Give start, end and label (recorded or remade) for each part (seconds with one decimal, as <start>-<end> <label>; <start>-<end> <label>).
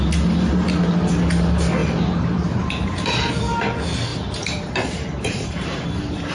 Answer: 0.0-1.8 recorded; 1.8-3.3 remade; 3.3-4.1 recorded; 4.1-6.3 remade